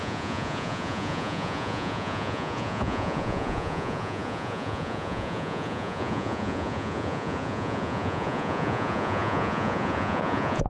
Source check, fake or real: fake